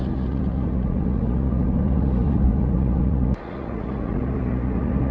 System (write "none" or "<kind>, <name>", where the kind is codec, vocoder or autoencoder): vocoder, Vocos